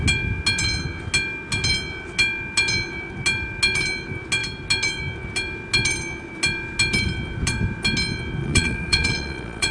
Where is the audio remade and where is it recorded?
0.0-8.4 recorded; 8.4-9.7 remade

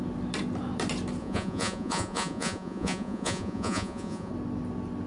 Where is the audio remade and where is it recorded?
0.0-1.2 recorded; 1.2-4.3 remade; 4.3-5.1 recorded

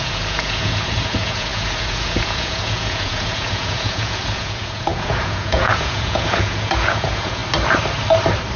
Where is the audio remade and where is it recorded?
0.0-7.4 remade; 7.4-8.6 recorded

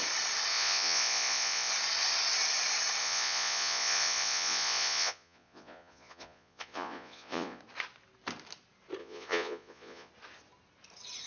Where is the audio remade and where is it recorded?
0.0-0.5 recorded; 0.5-1.7 remade; 1.7-3.0 recorded; 3.0-7.6 remade; 7.6-9.0 recorded; 9.0-10.1 remade; 10.1-11.3 recorded

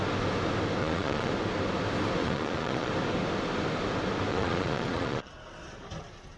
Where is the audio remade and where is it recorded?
0.0-0.8 recorded; 0.8-1.3 remade; 1.3-2.2 recorded; 2.2-2.9 remade; 2.9-4.3 recorded; 4.3-5.3 remade; 5.3-6.4 recorded

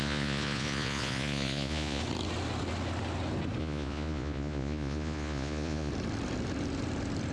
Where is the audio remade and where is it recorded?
0.0-2.0 remade; 2.0-3.6 recorded; 3.6-5.9 remade; 5.9-7.3 recorded